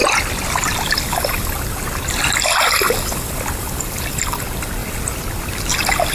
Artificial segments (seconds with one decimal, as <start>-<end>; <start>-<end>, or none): 0.0-3.7